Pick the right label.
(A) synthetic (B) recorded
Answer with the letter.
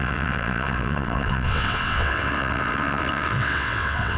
A